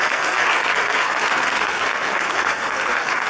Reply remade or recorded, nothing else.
remade